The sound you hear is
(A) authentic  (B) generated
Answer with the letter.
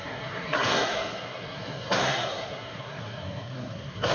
B